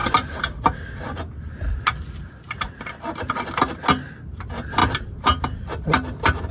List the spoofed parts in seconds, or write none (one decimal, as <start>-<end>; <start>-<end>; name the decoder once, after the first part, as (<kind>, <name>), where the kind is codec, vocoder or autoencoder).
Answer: none